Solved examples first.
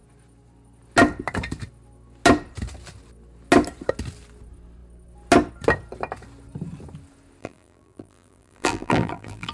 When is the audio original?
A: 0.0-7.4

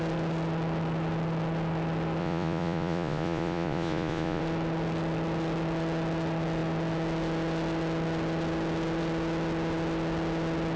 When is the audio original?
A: 0.0-2.2; 4.4-10.8

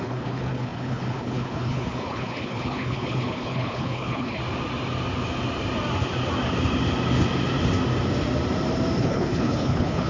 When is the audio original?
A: 4.4-9.0

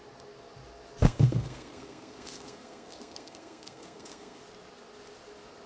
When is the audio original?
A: 0.0-1.0; 4.4-5.7